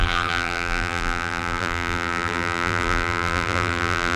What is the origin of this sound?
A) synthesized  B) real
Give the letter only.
A